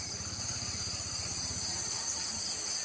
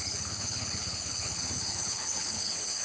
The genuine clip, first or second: first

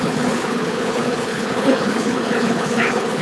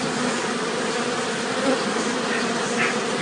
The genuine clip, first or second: second